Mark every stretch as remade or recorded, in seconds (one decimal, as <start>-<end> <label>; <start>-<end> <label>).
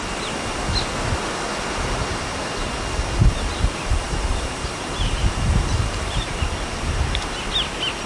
0.0-3.5 recorded; 3.5-6.4 remade; 6.4-8.1 recorded